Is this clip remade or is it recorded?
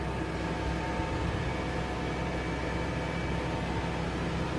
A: recorded